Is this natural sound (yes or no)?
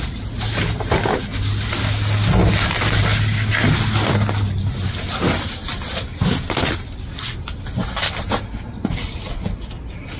yes